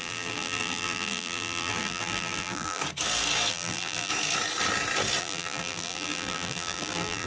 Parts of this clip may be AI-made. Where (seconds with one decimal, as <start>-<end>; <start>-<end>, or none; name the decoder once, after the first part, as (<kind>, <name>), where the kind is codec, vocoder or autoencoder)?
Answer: 0.0-2.8 (vocoder, BigVGAN v2); 3.5-4.1; 5.2-7.3